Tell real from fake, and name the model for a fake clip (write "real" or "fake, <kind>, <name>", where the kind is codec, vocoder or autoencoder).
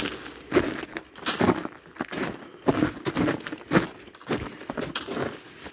real